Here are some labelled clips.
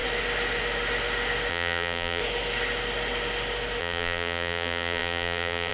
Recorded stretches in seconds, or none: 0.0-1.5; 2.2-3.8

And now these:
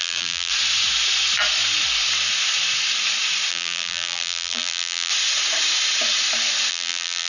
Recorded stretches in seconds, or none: 0.5-3.5; 5.1-6.7